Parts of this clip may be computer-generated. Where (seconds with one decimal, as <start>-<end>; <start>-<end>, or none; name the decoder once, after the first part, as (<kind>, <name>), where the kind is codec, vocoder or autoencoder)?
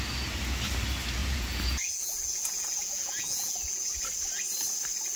1.2-4.0 (vocoder, Vocos)